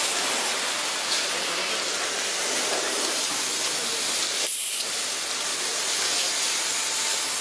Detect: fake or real real